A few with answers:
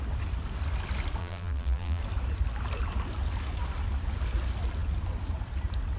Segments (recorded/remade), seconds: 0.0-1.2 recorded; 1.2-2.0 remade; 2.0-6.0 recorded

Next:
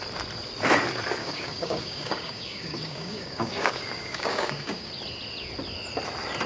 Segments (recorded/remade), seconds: 0.0-1.2 recorded; 1.2-4.9 remade; 4.9-6.5 recorded